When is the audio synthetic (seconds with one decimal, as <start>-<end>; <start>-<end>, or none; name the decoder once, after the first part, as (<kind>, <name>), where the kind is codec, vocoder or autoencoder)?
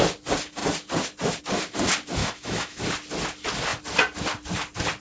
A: 2.2-2.8 (autoencoder, DAC-VAE)